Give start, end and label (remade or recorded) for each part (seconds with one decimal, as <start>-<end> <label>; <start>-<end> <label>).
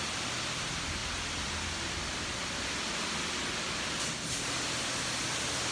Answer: 0.0-5.7 recorded